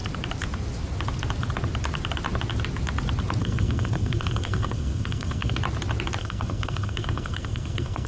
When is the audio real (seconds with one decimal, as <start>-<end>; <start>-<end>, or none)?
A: 0.0-3.4; 5.6-6.2